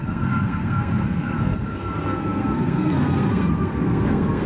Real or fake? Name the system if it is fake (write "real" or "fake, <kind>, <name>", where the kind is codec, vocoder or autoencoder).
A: fake, codec, SNAC